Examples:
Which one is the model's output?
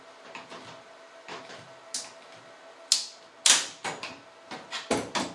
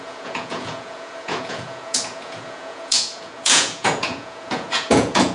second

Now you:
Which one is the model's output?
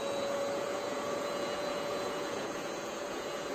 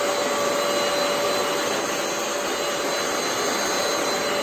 first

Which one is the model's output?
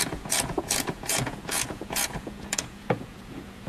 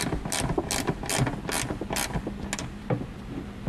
first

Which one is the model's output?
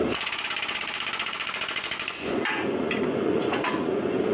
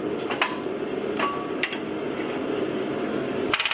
first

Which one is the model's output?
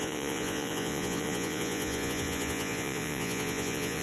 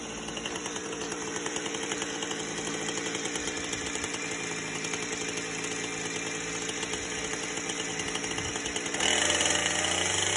first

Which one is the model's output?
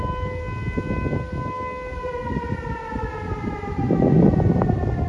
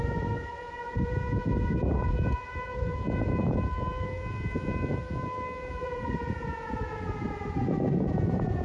second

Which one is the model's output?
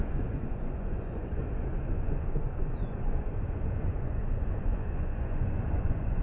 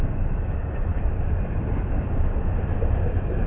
first